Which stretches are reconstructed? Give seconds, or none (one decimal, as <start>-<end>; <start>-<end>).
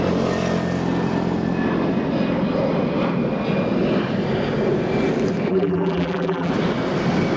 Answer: 5.5-6.5